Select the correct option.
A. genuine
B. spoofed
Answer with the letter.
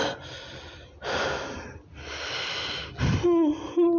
A